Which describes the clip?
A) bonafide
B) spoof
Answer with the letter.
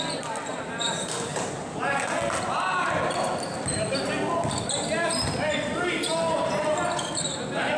A